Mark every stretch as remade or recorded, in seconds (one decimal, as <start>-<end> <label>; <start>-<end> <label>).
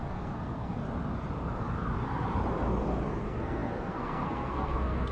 0.0-0.8 remade; 0.8-3.2 recorded; 3.2-5.1 remade